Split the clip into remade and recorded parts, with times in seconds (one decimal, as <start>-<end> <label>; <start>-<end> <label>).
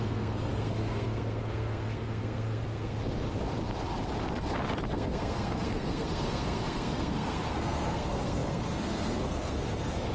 0.0-3.0 remade; 3.0-4.9 recorded; 4.9-10.1 remade